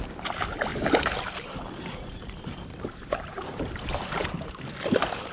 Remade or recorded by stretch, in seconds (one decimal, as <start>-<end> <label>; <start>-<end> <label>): 0.0-0.7 recorded; 0.7-3.7 remade; 3.7-5.3 recorded